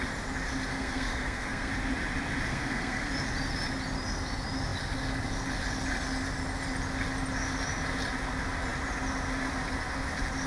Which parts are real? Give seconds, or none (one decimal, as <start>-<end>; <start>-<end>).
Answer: 0.0-0.7; 1.7-2.5; 3.1-10.5